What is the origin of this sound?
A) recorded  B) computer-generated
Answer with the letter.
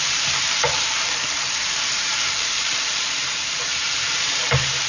B